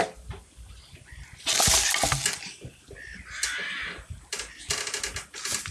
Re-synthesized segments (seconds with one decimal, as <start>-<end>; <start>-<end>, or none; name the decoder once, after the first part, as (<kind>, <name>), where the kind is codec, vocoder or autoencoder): none